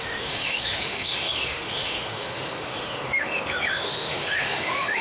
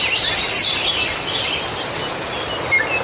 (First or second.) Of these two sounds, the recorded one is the second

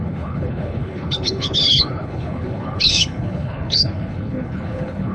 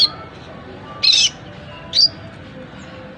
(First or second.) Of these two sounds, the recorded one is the second